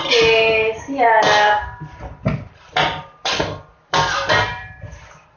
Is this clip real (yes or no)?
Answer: no